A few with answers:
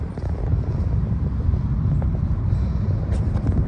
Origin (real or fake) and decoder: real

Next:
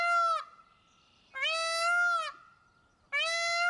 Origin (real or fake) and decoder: real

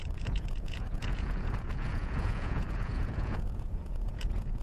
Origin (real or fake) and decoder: fake, vocoder, Vocos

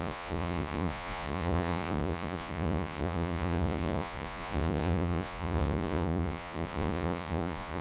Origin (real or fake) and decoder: fake, vocoder, Vocos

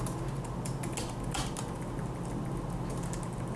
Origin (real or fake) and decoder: real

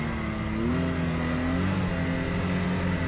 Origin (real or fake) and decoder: real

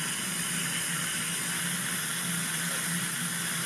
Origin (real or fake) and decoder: real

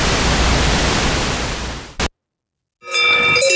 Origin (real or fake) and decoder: real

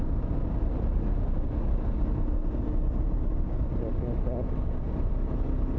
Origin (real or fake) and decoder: real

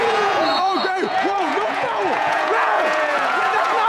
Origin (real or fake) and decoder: fake, vocoder, Vocos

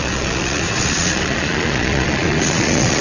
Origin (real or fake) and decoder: fake, vocoder, Vocos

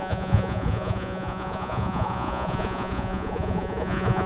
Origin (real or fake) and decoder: fake, vocoder, Vocos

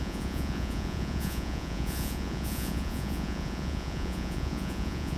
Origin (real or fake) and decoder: fake, vocoder, Vocos